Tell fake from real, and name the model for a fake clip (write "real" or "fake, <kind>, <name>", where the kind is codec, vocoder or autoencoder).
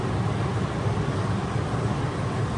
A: real